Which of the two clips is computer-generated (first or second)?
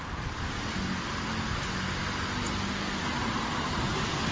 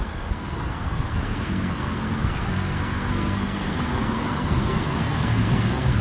second